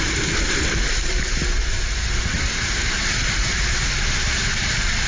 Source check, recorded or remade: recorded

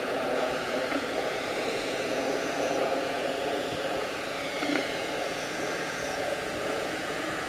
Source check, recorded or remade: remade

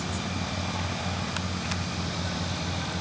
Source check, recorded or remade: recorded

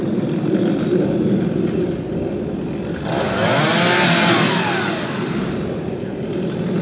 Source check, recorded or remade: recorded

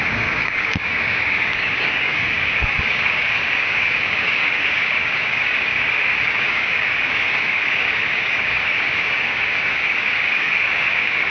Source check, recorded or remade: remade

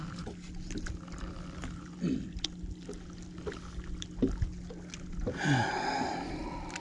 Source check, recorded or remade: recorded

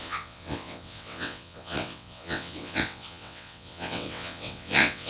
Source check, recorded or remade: remade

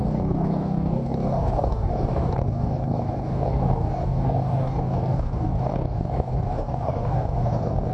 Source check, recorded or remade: remade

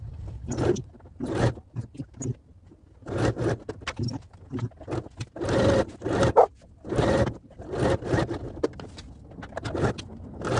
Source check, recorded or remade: recorded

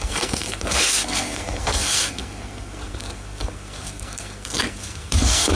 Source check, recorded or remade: remade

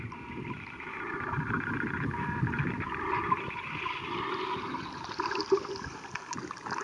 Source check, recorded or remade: recorded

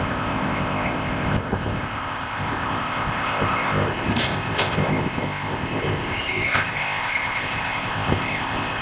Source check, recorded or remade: remade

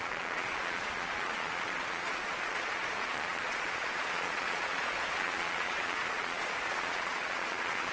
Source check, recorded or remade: remade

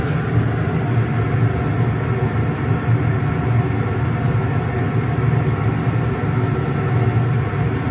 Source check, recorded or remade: recorded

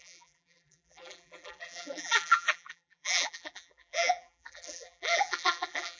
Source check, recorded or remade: remade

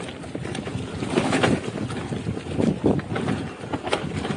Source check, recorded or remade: recorded